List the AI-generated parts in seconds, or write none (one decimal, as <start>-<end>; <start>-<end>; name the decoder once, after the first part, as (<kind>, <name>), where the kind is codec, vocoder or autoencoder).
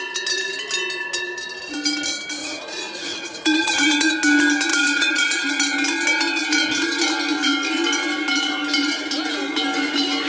2.4-4.1 (vocoder, Vocos); 4.7-5.5